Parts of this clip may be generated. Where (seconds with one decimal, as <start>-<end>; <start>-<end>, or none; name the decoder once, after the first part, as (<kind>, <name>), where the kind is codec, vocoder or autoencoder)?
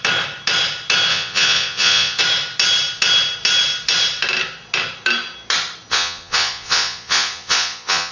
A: 1.1-2.2 (vocoder, Vocos); 5.9-8.1